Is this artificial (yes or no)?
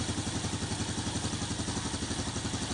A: no